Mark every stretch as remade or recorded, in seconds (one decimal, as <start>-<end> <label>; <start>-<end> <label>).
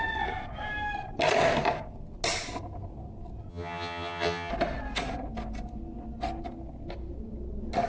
0.0-3.5 recorded; 3.5-4.5 remade; 4.5-7.9 recorded